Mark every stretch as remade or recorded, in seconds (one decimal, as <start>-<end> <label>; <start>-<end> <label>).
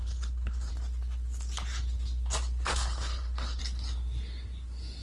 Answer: 0.0-0.7 remade; 0.7-2.7 recorded; 2.7-3.6 remade; 3.6-5.0 recorded